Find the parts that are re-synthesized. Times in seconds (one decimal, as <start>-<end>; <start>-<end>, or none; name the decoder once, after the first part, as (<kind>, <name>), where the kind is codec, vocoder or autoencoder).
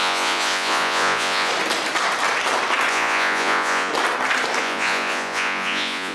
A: 0.0-1.5 (vocoder, Vocos); 2.9-3.9; 4.6-6.1